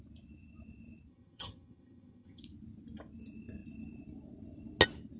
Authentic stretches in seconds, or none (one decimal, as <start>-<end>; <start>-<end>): 0.0-1.1; 2.4-5.2

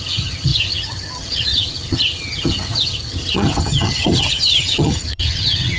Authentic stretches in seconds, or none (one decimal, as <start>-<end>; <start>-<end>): none

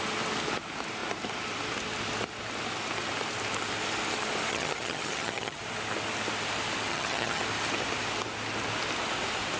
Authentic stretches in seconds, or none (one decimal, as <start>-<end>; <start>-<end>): 0.0-4.5; 5.6-6.9; 7.4-9.6

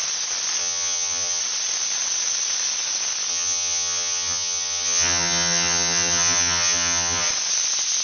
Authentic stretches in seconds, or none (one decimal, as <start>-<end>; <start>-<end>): 0.0-0.6; 1.4-3.3; 7.3-8.0

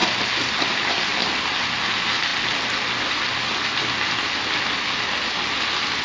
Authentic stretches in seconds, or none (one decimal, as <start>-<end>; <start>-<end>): 0.0-6.0